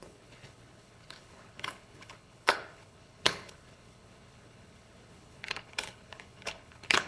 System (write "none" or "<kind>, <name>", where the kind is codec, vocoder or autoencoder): codec, HILCodec